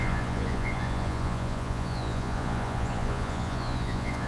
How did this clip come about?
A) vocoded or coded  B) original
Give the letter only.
A